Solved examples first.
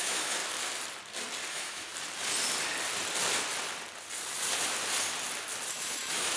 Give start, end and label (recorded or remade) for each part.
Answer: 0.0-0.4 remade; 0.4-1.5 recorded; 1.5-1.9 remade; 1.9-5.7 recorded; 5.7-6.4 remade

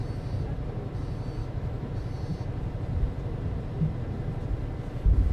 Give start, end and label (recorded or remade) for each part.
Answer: 0.0-1.4 recorded; 1.4-1.9 remade; 1.9-5.3 recorded

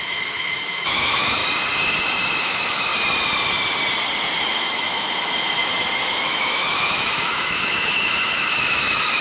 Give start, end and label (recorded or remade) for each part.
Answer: 0.0-1.4 remade; 1.4-2.4 recorded; 2.4-2.9 remade; 2.9-4.4 recorded; 4.4-5.6 remade; 5.6-6.1 recorded; 6.1-9.2 remade

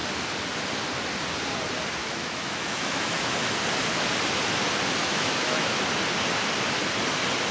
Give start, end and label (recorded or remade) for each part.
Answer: 0.0-2.0 recorded; 2.0-3.2 remade; 3.2-5.0 recorded; 5.0-5.8 remade; 5.8-7.5 recorded

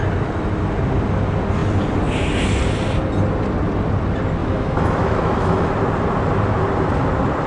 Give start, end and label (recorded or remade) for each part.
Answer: 0.0-4.4 recorded; 4.4-5.7 remade; 5.7-7.5 recorded